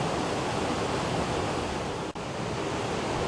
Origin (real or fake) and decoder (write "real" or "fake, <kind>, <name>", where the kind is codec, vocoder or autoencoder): real